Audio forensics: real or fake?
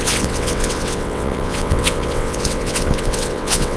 fake